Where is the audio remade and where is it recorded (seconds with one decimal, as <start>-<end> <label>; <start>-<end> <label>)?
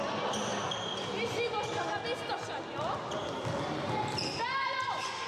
0.0-5.3 recorded